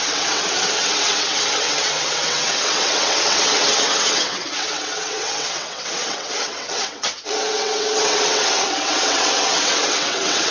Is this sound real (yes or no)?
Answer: no